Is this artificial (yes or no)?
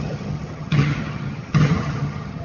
yes